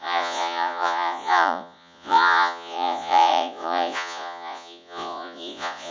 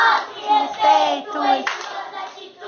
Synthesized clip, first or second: first